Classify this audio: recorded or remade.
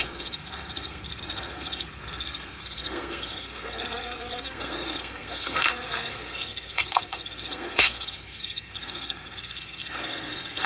remade